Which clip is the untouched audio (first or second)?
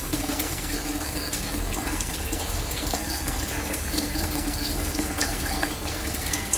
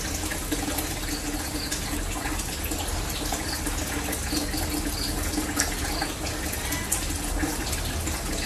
second